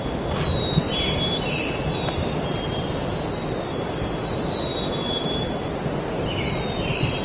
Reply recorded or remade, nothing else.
recorded